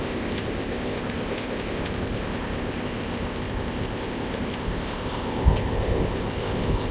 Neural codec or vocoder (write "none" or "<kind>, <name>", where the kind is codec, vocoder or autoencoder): codec, ZipCodec